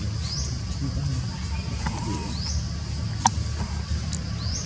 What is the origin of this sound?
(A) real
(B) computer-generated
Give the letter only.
A